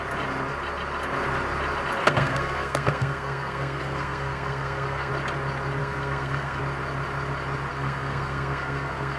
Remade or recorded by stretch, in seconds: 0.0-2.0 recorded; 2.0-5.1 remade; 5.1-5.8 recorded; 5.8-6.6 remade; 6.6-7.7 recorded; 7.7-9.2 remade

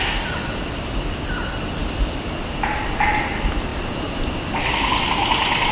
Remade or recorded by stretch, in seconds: 0.0-5.7 recorded

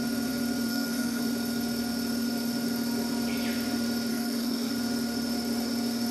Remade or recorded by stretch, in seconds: 0.0-0.7 recorded; 0.7-1.2 remade; 1.2-4.1 recorded; 4.1-4.7 remade; 4.7-6.1 recorded

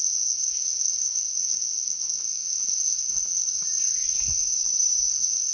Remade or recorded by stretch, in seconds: 0.0-3.5 remade; 3.5-5.1 recorded; 5.1-5.5 remade

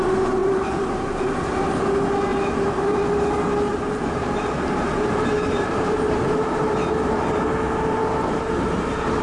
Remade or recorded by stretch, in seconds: 0.0-0.4 recorded; 0.4-1.2 remade; 1.2-2.3 recorded; 2.3-3.0 remade; 3.0-3.7 recorded; 3.7-6.2 remade; 6.2-9.2 recorded

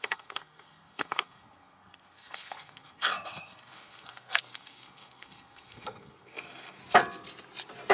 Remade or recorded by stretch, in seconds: 0.0-6.8 remade; 6.8-7.9 recorded

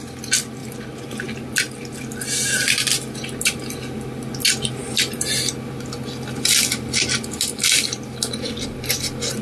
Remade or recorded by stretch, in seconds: 0.0-9.4 recorded